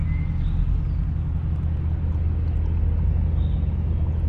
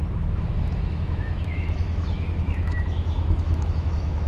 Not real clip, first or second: second